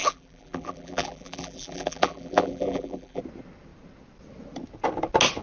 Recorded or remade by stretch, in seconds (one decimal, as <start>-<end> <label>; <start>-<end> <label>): 0.0-3.2 remade; 3.2-5.4 recorded

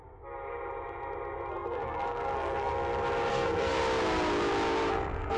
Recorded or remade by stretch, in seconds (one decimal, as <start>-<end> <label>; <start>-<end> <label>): 0.0-1.5 recorded; 1.5-2.7 remade; 2.7-3.3 recorded; 3.3-3.8 remade; 3.8-4.9 recorded; 4.9-5.4 remade

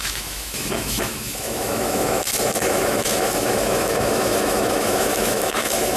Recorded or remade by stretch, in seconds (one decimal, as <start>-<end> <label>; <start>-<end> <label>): 0.0-6.0 remade

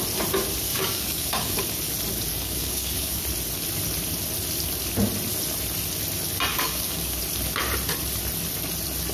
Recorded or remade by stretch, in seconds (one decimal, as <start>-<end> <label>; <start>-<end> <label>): 0.0-0.7 recorded; 0.7-1.6 remade; 1.6-2.3 recorded; 2.3-3.2 remade; 3.2-6.5 recorded; 6.5-7.2 remade; 7.2-9.1 recorded

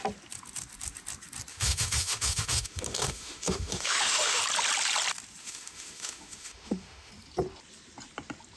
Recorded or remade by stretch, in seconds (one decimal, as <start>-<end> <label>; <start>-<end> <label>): 0.0-1.5 recorded; 1.5-4.4 remade; 4.4-5.4 recorded; 5.4-7.1 remade; 7.1-8.6 recorded

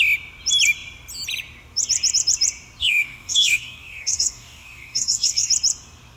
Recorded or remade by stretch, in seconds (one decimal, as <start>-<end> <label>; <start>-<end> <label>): 0.0-2.8 recorded; 2.8-5.5 remade; 5.5-6.2 recorded

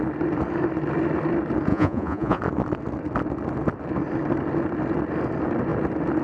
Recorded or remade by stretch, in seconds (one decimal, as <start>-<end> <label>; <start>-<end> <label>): 0.0-1.7 recorded; 1.7-2.4 remade; 2.4-6.2 recorded